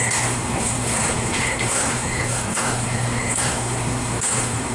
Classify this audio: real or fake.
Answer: fake